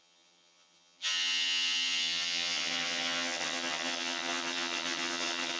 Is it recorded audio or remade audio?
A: remade